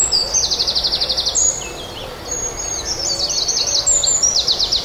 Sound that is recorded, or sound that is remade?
recorded